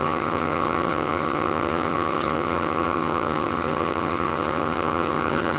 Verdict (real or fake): fake